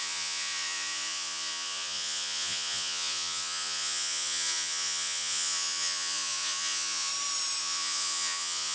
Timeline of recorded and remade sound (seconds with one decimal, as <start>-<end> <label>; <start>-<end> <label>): 0.0-7.1 remade; 7.1-7.6 recorded; 7.6-8.7 remade